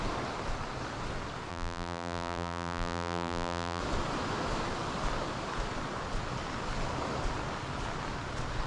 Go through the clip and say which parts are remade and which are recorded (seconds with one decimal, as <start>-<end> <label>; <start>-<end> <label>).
0.0-1.5 recorded; 1.5-3.8 remade; 3.8-8.7 recorded

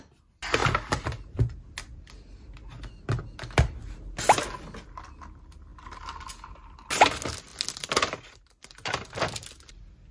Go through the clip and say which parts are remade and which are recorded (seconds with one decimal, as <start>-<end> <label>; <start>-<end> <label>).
0.0-0.6 recorded; 0.6-2.1 remade; 2.1-5.7 recorded; 5.7-6.3 remade; 6.3-7.5 recorded; 7.5-9.2 remade; 9.2-10.1 recorded

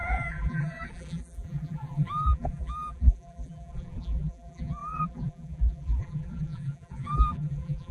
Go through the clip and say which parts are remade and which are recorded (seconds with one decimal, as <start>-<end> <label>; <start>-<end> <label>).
0.0-7.9 remade

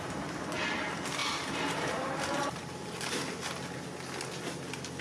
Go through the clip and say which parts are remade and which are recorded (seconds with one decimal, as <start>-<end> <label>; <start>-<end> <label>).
0.0-1.2 recorded; 1.2-3.2 remade; 3.2-5.0 recorded

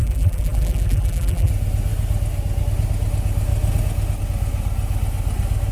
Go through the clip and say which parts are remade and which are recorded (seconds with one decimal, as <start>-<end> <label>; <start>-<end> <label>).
0.0-1.5 remade; 1.5-5.7 recorded